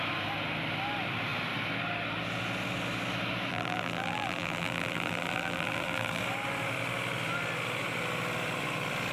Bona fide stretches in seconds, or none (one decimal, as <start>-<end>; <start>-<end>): 0.0-3.5; 6.2-9.1